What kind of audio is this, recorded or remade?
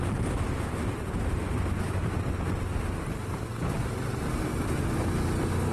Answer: recorded